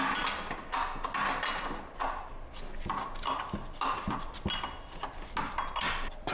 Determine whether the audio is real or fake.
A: real